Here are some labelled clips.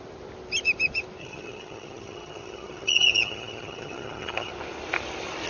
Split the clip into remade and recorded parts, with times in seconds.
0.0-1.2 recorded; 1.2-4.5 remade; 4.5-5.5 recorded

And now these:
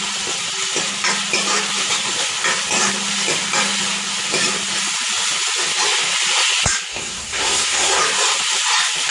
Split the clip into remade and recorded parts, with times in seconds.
0.0-6.9 recorded; 6.9-8.0 remade; 8.0-9.1 recorded

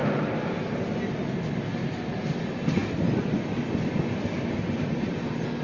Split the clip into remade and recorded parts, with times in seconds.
0.0-1.7 recorded; 1.7-2.2 remade; 2.2-5.6 recorded